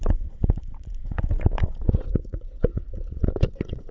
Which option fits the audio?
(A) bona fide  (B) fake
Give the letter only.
B